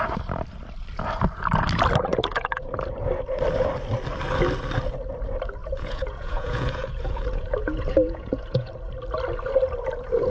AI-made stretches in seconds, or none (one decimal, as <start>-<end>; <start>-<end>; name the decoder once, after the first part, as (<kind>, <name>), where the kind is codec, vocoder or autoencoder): 2.1-2.7 (vocoder, Vocos); 5.6-8.7